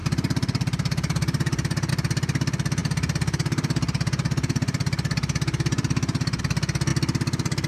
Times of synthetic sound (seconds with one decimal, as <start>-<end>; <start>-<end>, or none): 0.0-1.9; 2.8-6.4